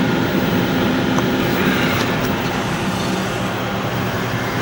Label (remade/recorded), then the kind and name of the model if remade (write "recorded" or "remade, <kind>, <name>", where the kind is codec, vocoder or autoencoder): recorded